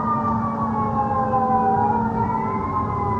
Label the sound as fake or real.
real